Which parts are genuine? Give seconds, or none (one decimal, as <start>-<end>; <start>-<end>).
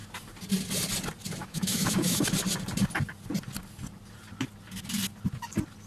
0.0-1.4; 2.2-5.9